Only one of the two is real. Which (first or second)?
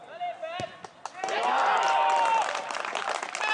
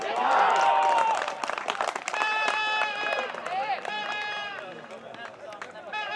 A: first